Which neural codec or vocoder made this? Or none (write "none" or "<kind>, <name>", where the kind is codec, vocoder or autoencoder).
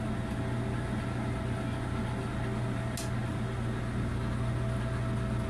none